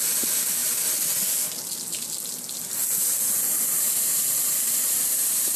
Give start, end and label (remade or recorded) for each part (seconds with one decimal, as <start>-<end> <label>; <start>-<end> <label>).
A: 0.0-2.8 recorded; 2.8-5.6 remade